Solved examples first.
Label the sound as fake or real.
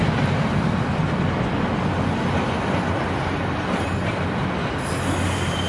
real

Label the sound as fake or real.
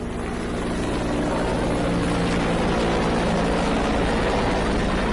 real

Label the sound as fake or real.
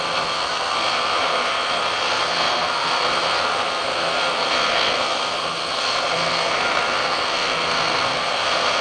fake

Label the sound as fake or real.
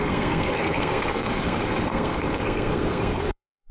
fake